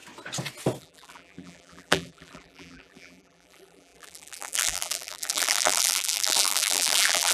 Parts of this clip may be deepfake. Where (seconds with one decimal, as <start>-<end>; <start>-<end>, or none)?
0.8-7.3